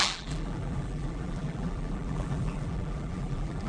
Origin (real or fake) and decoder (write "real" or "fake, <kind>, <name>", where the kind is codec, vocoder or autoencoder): fake, vocoder, BigVGAN v2